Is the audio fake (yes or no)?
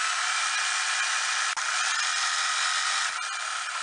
no